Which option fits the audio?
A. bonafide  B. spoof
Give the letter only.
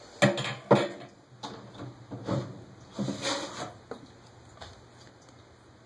A